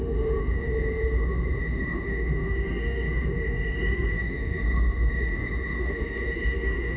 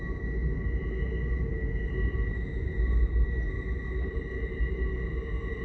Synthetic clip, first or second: first